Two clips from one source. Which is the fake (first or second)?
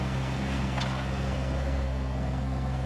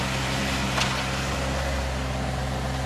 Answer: first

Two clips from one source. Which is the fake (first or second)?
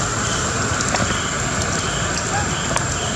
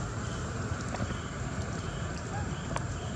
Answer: second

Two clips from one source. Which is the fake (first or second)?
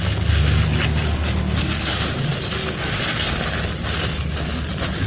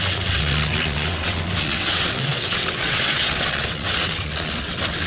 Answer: second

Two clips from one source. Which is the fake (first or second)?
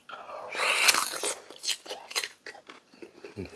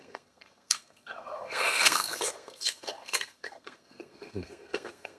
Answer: second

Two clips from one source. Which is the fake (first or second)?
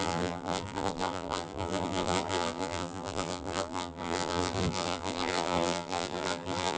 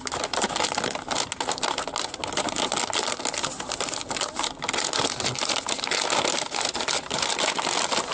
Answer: first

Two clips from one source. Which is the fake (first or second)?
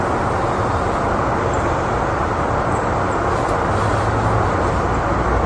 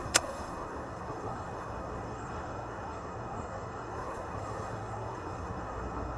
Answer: second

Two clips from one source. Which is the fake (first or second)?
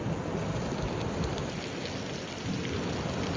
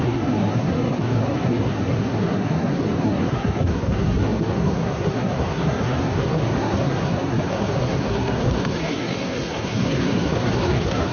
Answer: second